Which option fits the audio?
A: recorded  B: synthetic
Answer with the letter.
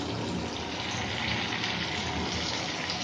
A